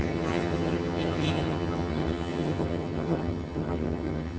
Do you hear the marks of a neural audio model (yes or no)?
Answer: yes